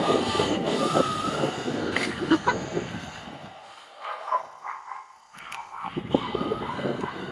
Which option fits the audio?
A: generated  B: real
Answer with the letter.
A